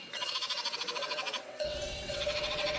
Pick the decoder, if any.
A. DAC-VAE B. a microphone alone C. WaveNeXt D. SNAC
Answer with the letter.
C